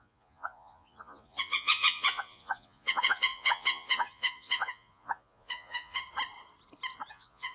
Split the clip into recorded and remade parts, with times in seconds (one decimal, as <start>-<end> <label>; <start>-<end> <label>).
0.0-6.0 remade; 6.0-7.1 recorded; 7.1-7.5 remade